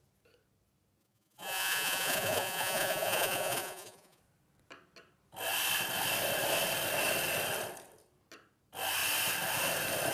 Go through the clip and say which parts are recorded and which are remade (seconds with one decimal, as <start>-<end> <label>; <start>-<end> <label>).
0.0-1.0 recorded; 1.0-4.2 remade; 4.2-10.1 recorded